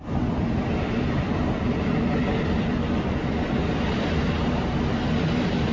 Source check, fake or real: real